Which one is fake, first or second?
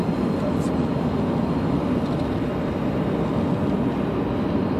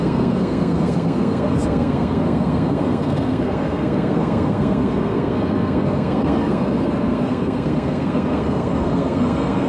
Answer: second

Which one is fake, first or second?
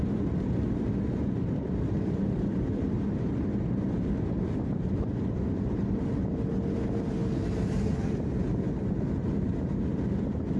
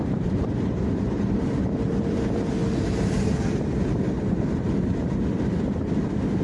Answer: second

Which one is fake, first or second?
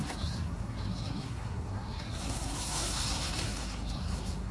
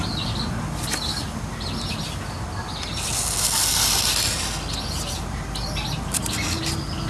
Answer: first